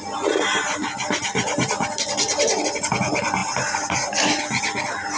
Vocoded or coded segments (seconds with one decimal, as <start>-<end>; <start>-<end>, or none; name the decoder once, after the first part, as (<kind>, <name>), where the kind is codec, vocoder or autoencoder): none

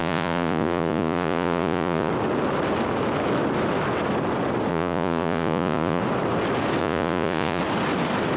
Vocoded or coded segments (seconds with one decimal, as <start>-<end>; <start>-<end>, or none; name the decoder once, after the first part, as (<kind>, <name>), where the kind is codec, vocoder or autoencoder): 0.0-2.1 (vocoder, Vocos); 4.7-6.0; 6.8-7.6